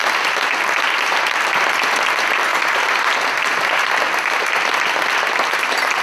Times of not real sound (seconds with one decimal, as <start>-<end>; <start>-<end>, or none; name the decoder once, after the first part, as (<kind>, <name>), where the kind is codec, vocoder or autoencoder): none